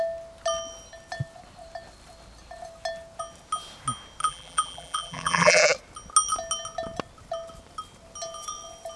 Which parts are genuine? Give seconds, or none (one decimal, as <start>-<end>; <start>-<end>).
0.0-4.2; 5.6-9.0